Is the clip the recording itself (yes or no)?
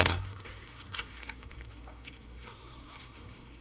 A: no